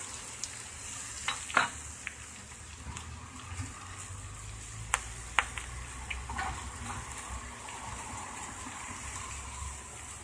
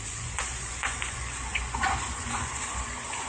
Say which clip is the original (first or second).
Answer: first